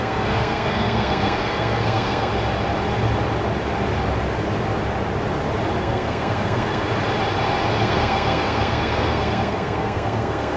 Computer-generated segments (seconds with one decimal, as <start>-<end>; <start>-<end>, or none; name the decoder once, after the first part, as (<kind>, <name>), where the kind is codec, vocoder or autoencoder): 0.0-2.3 (codec, SNAC); 5.8-6.9; 7.8-10.6